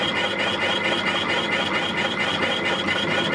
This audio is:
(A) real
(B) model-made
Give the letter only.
A